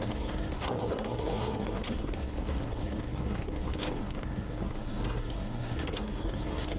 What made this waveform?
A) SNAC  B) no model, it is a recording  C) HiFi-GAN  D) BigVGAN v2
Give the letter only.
A